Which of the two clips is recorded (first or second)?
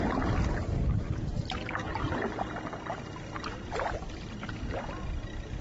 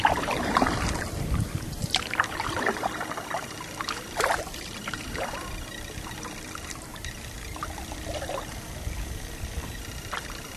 first